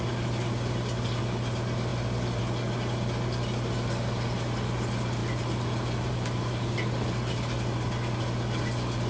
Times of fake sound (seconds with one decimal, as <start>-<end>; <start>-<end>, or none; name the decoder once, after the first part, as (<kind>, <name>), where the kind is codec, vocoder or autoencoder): none